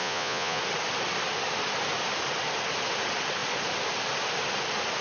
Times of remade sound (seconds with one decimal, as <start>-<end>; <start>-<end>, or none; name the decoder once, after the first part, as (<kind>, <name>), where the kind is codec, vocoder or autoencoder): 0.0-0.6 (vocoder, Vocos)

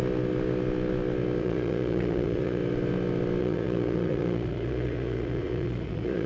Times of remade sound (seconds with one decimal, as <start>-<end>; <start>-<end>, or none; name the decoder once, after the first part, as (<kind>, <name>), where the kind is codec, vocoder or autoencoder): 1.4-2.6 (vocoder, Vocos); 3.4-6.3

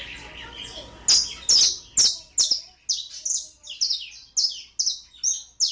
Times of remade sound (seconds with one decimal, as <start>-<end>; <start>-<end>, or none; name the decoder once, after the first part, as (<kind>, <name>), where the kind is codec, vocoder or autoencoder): none

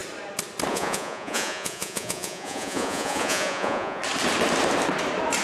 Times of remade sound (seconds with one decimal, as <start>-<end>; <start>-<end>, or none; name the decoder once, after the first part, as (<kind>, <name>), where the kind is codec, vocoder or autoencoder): 0.7-4.0 (vocoder, Vocos)

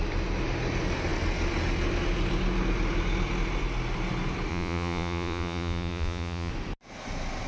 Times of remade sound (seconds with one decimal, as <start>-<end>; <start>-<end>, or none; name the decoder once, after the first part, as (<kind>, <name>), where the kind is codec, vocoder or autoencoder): 4.5-6.5 (vocoder, Vocos)